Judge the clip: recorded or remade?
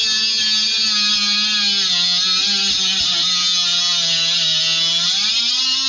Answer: recorded